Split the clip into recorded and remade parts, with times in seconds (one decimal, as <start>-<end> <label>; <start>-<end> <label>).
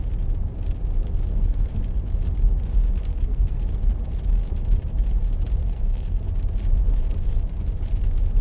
0.0-1.3 recorded; 1.3-1.8 remade; 1.8-3.1 recorded; 3.1-4.0 remade; 4.0-5.6 recorded; 5.6-6.2 remade; 6.2-8.4 recorded